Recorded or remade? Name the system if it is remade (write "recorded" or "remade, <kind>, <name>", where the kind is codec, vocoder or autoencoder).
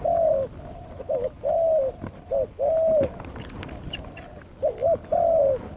recorded